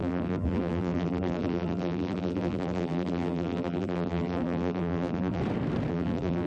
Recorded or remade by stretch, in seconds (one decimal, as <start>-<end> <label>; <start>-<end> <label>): 0.0-5.4 remade; 5.4-5.9 recorded; 5.9-6.5 remade